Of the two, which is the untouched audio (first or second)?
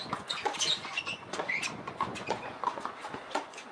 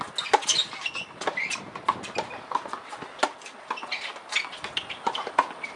second